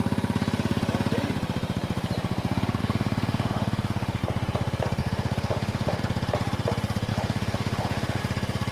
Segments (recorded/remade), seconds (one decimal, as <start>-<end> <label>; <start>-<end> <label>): 0.0-2.8 recorded; 2.8-4.2 remade; 4.2-5.0 recorded; 5.0-6.0 remade; 6.0-7.1 recorded; 7.1-8.2 remade; 8.2-8.7 recorded